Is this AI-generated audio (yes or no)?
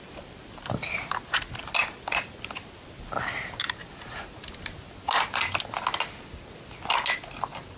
no